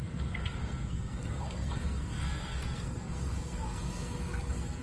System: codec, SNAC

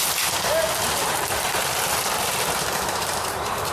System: none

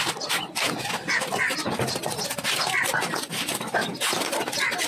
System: none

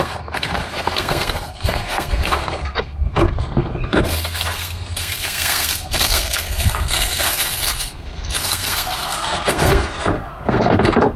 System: codec, SNAC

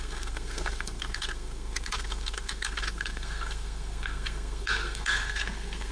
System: codec, SNAC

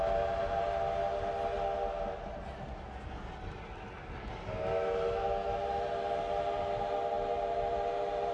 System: none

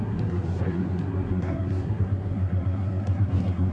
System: codec, SNAC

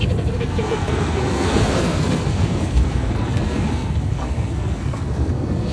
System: codec, SNAC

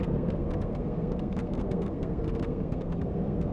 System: codec, SNAC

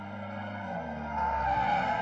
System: codec, SNAC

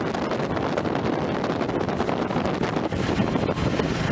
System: none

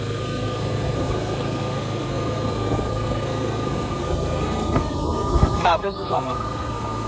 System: codec, SNAC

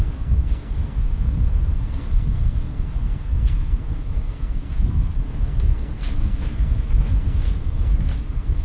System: codec, SNAC